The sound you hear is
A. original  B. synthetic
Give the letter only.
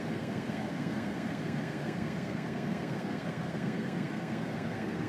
B